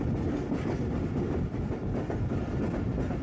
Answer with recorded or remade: recorded